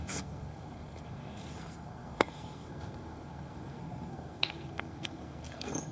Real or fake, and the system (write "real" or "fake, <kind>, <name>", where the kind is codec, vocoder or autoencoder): fake, codec, SNAC